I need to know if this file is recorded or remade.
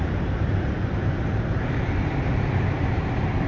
remade